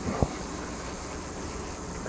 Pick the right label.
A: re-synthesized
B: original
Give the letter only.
B